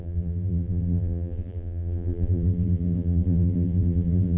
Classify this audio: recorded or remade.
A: remade